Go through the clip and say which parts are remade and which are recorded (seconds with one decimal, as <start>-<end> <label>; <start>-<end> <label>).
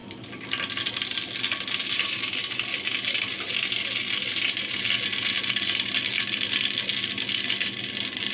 0.0-8.3 recorded